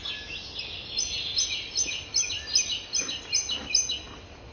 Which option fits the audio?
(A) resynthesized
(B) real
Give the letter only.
B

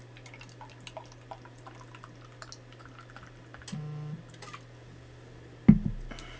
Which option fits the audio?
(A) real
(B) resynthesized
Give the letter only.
A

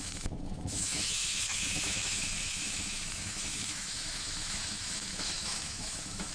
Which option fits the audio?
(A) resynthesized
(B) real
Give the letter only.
A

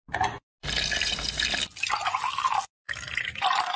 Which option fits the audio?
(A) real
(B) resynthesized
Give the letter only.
A